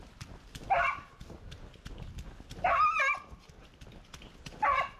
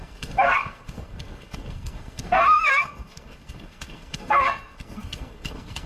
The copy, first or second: second